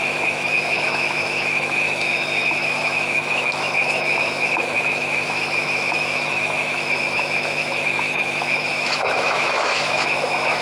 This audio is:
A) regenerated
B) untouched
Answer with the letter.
A